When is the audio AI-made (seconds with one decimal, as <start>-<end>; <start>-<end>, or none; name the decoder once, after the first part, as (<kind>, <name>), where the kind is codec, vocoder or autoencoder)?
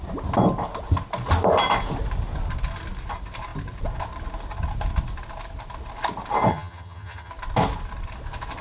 6.5-7.3 (vocoder, HiFi-GAN)